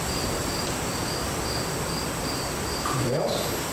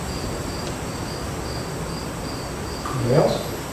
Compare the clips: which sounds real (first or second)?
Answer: second